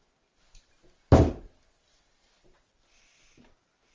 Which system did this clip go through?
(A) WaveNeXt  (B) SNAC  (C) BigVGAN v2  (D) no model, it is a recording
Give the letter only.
D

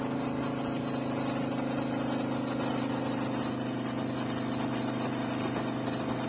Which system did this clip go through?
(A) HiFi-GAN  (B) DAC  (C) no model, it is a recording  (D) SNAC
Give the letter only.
C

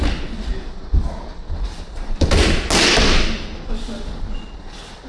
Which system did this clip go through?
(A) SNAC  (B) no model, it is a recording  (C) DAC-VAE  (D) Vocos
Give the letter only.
B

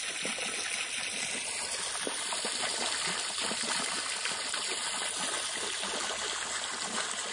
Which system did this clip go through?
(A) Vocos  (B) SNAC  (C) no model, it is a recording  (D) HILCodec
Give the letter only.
C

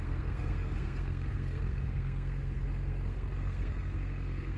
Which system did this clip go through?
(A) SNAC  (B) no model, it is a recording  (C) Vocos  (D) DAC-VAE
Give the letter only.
A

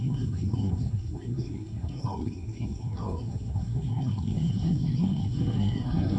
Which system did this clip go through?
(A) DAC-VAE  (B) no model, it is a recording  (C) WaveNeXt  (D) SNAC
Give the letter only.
D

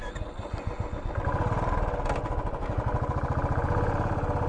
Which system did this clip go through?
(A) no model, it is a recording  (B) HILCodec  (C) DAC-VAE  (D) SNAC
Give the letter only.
A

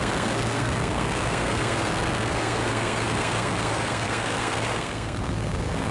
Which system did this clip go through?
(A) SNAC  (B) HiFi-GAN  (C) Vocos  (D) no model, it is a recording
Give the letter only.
A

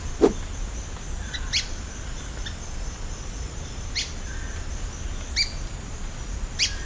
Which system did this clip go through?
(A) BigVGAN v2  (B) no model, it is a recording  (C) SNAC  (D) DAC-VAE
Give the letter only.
B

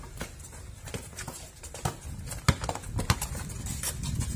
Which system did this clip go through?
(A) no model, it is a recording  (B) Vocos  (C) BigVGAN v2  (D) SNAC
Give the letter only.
A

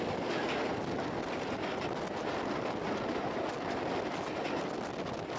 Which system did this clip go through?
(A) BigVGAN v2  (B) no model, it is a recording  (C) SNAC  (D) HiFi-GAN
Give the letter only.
B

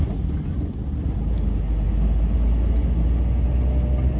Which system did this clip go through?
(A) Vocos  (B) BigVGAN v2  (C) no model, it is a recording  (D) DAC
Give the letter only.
C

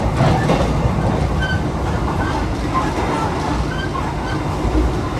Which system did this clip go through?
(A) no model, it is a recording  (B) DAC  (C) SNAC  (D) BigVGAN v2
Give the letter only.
A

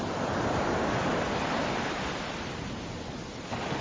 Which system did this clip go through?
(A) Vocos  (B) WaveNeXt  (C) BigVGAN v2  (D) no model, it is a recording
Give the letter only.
D